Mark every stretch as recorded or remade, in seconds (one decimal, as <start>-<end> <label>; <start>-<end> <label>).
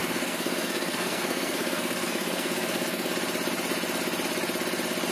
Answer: 0.0-3.1 remade; 3.1-5.1 recorded